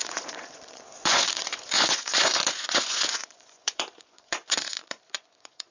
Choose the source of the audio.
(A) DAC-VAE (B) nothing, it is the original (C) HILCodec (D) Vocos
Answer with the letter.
D